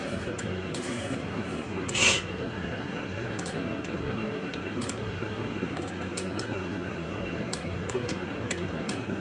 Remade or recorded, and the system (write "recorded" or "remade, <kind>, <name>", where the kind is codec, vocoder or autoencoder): remade, codec, SNAC